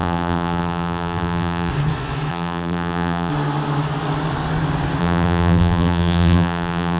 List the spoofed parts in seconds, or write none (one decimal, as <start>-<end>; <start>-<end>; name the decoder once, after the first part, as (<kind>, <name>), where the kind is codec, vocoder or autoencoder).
0.0-1.7 (vocoder, BigVGAN v2); 2.3-3.3; 5.0-7.0